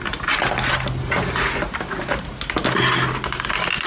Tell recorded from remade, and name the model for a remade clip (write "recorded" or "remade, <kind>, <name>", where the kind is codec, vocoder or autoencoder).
recorded